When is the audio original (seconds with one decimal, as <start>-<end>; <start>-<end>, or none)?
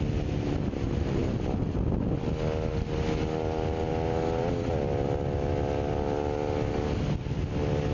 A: 0.0-7.9